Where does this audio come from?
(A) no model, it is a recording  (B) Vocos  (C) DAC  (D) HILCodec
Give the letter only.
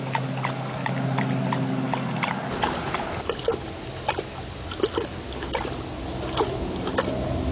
A